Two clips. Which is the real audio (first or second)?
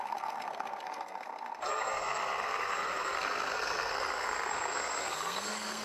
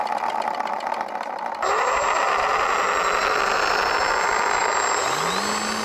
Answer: second